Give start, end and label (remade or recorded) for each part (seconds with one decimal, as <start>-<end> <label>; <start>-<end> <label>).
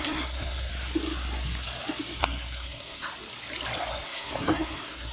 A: 0.0-0.7 remade; 0.7-2.2 recorded; 2.2-3.1 remade; 3.1-3.9 recorded; 3.9-5.1 remade